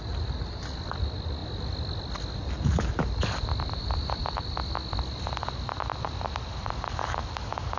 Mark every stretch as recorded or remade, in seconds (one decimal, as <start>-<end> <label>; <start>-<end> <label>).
0.0-7.8 recorded